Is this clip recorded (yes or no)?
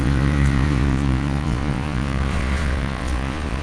no